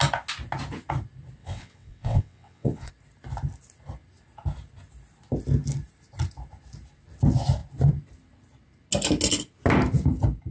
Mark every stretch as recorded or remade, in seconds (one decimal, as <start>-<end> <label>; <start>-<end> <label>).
0.0-1.4 recorded; 1.4-2.9 remade; 2.9-10.5 recorded